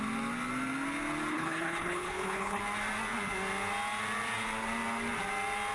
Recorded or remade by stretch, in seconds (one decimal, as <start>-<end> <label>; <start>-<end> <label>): 0.0-1.3 recorded; 1.3-2.6 remade; 2.6-5.7 recorded